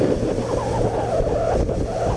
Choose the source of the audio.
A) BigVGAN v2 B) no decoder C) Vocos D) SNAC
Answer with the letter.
B